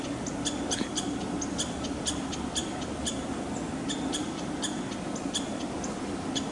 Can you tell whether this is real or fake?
real